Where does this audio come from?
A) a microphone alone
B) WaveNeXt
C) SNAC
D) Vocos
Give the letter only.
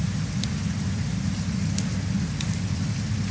A